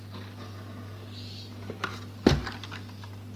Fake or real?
real